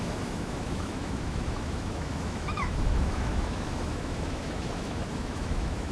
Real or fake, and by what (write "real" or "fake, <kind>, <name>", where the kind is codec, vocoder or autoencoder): fake, autoencoder, DAC-VAE